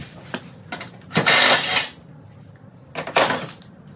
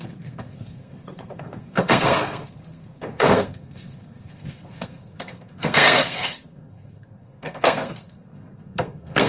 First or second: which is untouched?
first